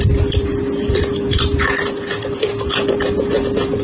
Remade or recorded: recorded